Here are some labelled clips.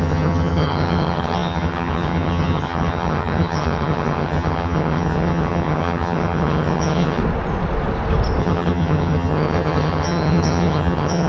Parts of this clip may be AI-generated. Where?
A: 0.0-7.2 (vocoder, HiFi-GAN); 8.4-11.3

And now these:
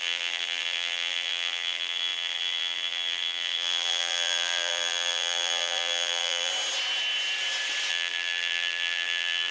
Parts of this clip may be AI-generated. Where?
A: 0.0-6.5 (vocoder, BigVGAN v2); 7.9-9.5

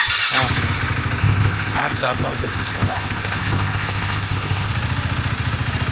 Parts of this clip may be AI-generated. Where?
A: 1.2-4.7 (codec, ZipCodec)

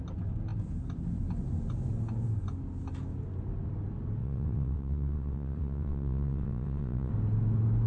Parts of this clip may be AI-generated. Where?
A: 4.2-7.1 (vocoder, WaveNeXt)

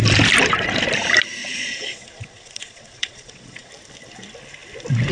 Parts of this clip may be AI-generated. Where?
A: 1.4-3.7 (vocoder, Vocos)